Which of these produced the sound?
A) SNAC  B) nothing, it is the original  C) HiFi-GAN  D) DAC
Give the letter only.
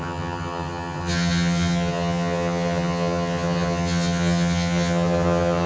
C